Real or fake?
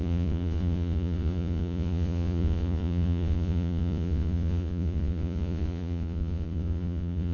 fake